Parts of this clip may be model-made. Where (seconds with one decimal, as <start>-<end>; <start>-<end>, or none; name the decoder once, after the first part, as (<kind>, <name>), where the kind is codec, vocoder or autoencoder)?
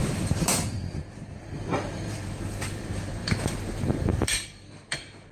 0.0-5.3 (vocoder, BigVGAN v2)